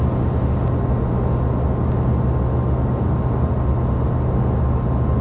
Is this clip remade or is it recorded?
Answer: recorded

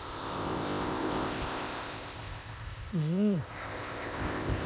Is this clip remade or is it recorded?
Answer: remade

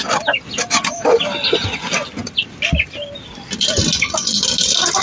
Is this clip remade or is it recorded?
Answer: recorded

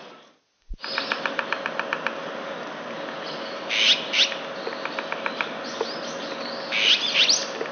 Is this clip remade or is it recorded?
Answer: recorded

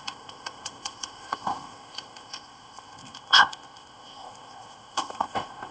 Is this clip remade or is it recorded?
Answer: remade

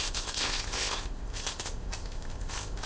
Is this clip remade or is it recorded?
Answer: remade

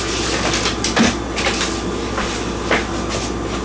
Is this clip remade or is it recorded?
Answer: recorded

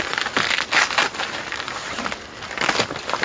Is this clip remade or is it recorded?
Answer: recorded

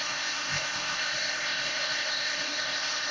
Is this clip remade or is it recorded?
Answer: remade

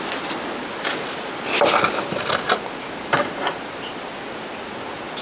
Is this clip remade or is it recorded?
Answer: recorded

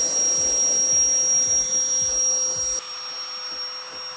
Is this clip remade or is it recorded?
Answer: recorded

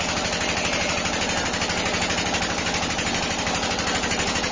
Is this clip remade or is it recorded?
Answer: recorded